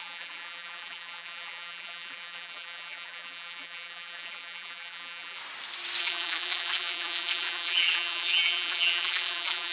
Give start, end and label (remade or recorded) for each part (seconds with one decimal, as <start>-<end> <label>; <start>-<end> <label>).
0.0-5.4 remade; 5.4-6.0 recorded; 6.0-9.7 remade